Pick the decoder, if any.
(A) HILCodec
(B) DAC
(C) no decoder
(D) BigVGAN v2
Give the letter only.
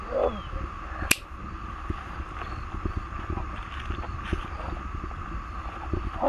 C